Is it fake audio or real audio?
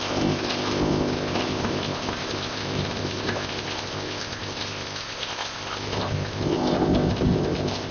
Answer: fake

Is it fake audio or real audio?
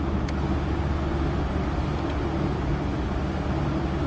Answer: real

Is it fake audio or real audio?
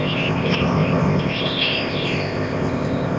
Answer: fake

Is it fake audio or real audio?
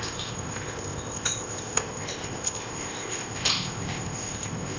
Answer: fake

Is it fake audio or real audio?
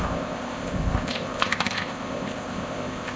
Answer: fake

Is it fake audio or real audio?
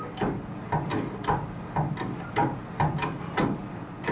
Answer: real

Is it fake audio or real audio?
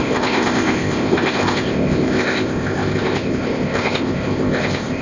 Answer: fake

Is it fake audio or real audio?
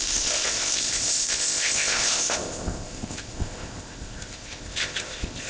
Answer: fake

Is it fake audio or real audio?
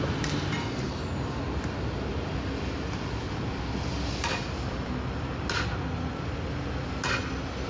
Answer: real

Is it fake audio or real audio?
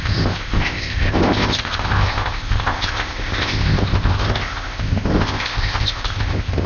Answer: fake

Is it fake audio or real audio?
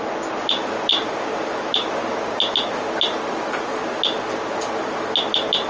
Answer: real